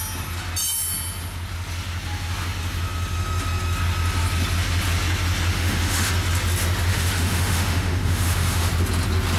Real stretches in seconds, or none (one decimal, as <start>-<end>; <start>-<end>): 0.0-5.5; 6.1-6.9; 8.7-9.4